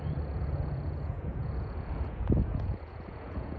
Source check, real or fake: fake